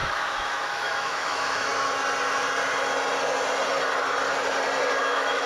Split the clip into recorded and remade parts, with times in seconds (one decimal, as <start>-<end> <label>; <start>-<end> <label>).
0.0-1.7 remade; 1.7-5.0 recorded; 5.0-5.5 remade